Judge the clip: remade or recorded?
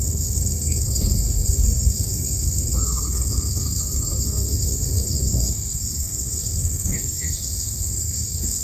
remade